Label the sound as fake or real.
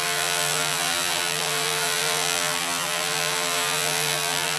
fake